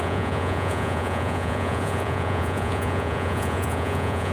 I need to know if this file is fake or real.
fake